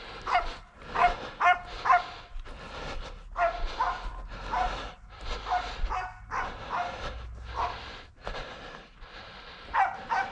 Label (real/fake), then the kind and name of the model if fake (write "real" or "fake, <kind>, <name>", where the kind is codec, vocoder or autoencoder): real